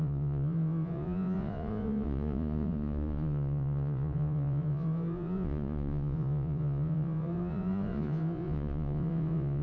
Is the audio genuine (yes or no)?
no